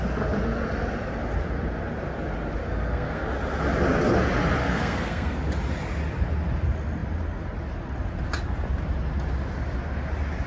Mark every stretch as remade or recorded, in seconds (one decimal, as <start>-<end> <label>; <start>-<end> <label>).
0.0-2.6 recorded; 2.6-3.2 remade; 3.2-4.6 recorded; 4.6-5.4 remade; 5.4-10.5 recorded